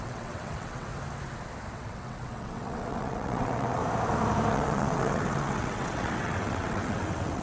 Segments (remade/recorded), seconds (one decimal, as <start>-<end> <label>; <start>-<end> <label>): 0.0-0.9 remade; 0.9-1.7 recorded; 1.7-3.8 remade; 3.8-4.5 recorded; 4.5-7.4 remade